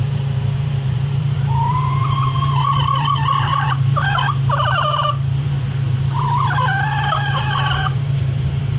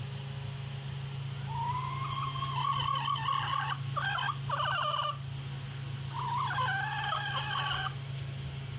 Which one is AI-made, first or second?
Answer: first